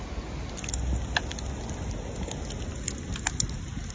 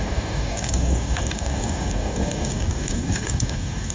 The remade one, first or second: second